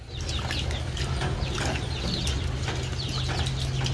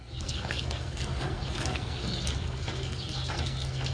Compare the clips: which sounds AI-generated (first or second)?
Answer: second